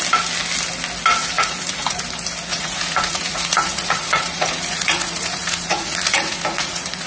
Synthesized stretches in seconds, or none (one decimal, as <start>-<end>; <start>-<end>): 1.2-2.0; 2.5-7.1